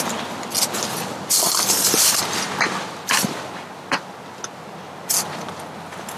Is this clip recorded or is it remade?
recorded